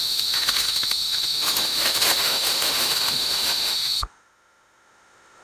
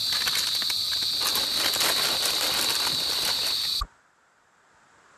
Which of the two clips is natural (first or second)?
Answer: second